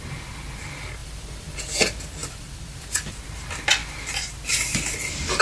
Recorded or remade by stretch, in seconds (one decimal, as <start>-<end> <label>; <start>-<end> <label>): 0.0-1.0 recorded; 1.0-1.6 remade; 1.6-2.2 recorded; 2.2-3.1 remade; 3.1-5.4 recorded